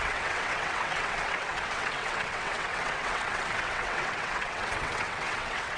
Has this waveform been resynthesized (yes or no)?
yes